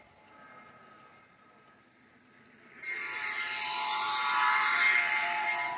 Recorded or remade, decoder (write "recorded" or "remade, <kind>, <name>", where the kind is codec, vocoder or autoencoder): recorded